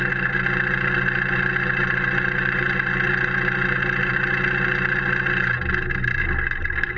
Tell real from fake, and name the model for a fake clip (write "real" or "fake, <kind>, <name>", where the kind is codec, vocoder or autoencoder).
real